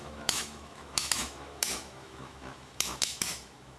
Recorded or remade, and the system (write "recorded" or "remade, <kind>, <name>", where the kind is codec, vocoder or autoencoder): remade, autoencoder, DAC-VAE